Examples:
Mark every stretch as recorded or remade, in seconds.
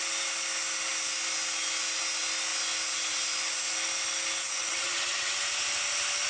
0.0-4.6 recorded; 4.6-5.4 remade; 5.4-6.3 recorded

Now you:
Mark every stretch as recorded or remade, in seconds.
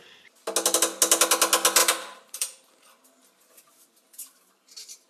0.0-1.8 recorded; 1.8-5.1 remade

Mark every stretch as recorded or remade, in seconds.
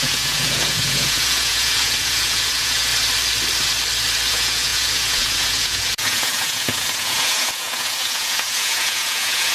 0.0-2.9 remade; 2.9-4.3 recorded; 4.3-9.5 remade